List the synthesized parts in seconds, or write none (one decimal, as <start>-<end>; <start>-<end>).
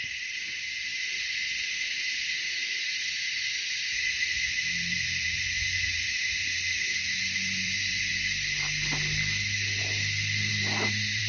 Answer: 0.0-0.9; 4.4-8.1; 10.5-11.3